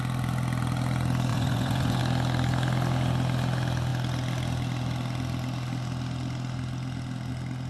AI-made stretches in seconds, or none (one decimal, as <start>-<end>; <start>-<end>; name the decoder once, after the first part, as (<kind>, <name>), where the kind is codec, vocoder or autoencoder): 1.3-2.0 (vocoder, Vocos)

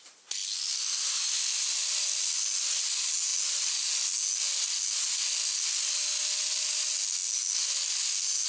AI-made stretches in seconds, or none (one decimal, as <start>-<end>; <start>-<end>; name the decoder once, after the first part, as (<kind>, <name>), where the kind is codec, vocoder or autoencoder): none

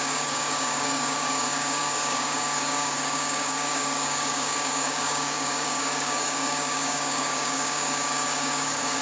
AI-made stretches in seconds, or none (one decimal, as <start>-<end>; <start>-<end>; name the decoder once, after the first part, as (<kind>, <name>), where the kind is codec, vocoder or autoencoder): 0.0-9.0 (codec, DAC)

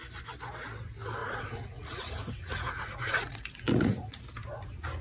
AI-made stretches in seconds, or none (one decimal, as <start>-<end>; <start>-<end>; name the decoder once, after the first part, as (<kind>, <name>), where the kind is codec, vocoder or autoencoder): 1.2-4.2 (vocoder, Vocos)

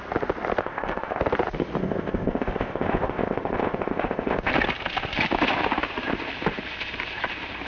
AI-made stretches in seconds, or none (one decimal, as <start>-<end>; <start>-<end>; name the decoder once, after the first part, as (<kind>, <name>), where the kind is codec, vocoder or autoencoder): 0.6-1.2 (codec, ZipCodec); 1.8-4.5

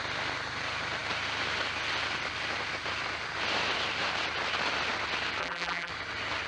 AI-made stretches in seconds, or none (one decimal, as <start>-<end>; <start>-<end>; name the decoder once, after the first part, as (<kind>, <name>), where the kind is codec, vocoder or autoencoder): 5.4-5.9 (vocoder, BigVGAN v2)

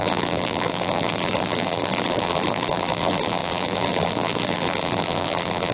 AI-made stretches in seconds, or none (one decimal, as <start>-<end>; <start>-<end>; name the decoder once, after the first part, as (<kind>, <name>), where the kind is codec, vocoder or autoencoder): 0.0-5.7 (vocoder, BigVGAN v2)

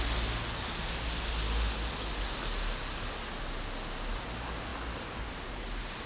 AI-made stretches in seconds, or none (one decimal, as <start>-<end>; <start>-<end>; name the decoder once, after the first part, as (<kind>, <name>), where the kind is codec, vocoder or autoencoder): none